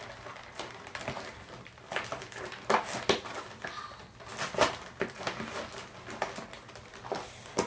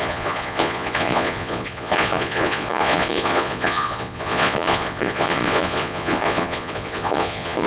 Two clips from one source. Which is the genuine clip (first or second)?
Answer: first